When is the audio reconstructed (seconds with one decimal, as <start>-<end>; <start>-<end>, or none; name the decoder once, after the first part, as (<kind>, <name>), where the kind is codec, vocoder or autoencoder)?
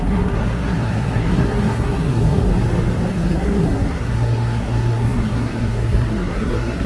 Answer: 0.0-2.5 (codec, SNAC); 3.1-6.9